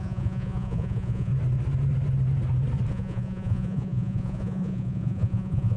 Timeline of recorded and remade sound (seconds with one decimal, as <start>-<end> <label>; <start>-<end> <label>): 0.0-1.3 remade; 1.3-2.9 recorded; 2.9-5.8 remade